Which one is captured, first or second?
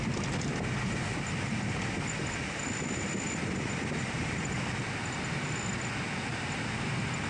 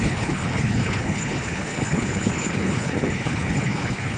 first